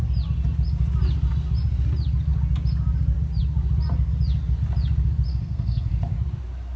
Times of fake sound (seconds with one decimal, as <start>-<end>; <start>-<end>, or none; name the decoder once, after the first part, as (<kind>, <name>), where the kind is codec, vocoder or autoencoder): 5.3-5.9 (codec, SNAC)